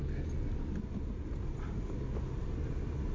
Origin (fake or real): real